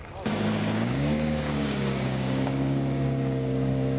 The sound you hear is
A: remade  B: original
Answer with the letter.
A